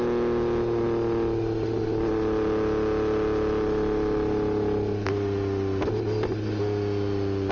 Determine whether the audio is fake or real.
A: real